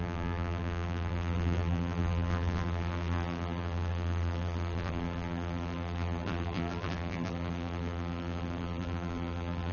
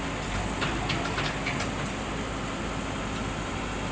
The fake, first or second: first